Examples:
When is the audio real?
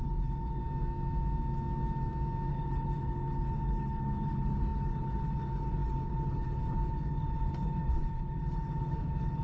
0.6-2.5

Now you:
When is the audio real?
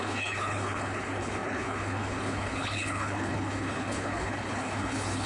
none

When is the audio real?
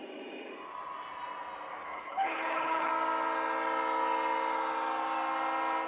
0.0-1.9; 2.9-5.9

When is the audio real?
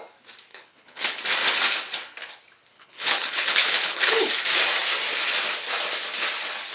0.0-0.5; 1.2-2.7; 4.3-6.7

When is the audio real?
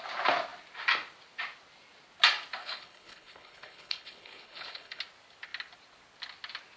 0.0-2.6; 5.0-6.8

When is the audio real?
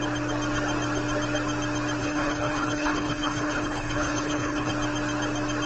0.0-2.0; 4.7-5.7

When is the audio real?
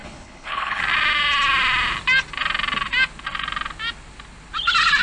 0.8-5.0